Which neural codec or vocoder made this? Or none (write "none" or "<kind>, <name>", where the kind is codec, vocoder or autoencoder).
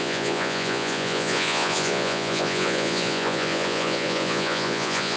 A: vocoder, Vocos